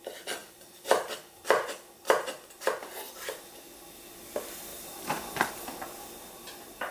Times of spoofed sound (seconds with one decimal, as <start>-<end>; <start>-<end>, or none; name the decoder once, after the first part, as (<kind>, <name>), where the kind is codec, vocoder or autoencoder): 0.4-3.1 (vocoder, BigVGAN v2); 4.7-5.5